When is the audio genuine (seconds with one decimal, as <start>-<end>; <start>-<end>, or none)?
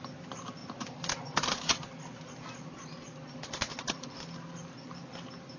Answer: 0.0-5.6